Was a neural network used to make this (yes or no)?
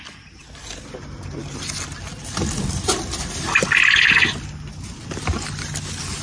no